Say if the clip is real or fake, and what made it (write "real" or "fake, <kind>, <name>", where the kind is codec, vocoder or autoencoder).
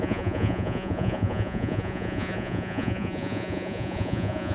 fake, vocoder, Vocos